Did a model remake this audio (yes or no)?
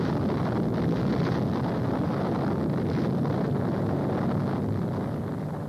no